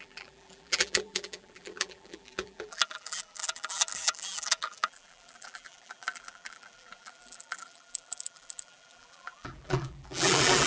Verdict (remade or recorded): remade